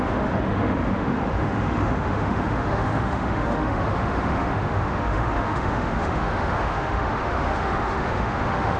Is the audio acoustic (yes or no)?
no